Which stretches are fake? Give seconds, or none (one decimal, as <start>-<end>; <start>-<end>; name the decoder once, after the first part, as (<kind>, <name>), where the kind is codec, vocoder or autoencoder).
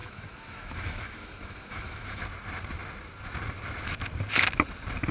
0.0-2.2 (autoencoder, DAC-VAE)